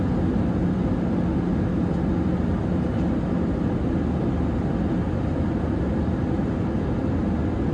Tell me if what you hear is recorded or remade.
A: recorded